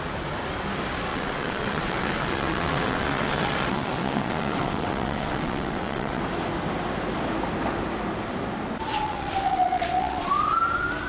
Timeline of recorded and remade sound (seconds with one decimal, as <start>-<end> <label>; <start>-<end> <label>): 0.0-1.1 recorded; 1.1-6.2 remade; 6.2-8.9 recorded; 8.9-10.3 remade; 10.3-11.1 recorded